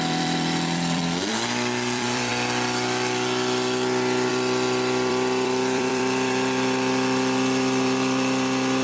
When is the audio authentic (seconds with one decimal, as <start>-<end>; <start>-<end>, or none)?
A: 2.3-4.3

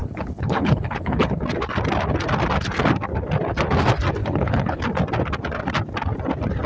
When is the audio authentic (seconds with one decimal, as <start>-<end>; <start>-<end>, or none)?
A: 1.4-4.2; 4.8-6.7

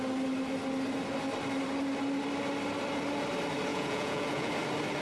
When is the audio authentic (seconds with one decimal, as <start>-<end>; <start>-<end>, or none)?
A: 0.0-3.7; 4.5-5.0

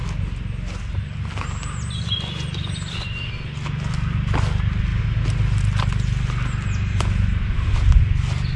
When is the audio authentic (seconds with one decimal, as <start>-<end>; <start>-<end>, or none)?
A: 0.0-8.6

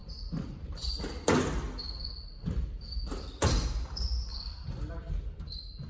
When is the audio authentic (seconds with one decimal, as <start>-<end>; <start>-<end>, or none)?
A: 0.0-4.3; 5.1-5.9

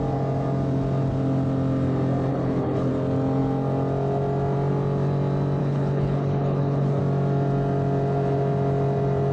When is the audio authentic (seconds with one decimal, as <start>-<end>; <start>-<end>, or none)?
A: 0.0-2.3; 2.9-5.6; 7.0-9.3

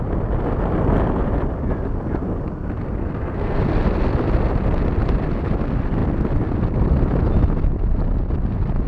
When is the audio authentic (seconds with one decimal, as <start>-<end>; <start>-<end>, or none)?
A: 0.0-3.0; 3.6-8.9

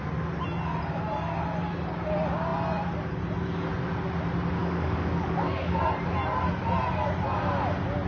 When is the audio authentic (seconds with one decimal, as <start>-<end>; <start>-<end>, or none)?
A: 0.0-4.6; 5.8-8.1